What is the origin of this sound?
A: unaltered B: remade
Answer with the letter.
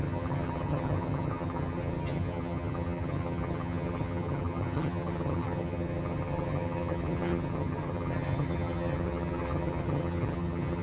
B